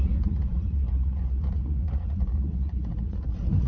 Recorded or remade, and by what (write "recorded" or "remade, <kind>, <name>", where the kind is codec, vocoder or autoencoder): remade, vocoder, Vocos